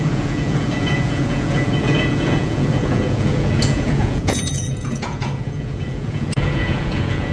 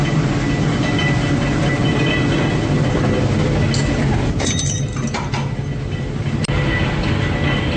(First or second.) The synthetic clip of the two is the first